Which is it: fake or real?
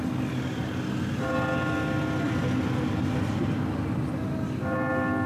real